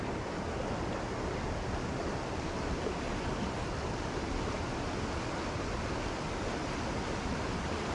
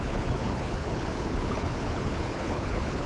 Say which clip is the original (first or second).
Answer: first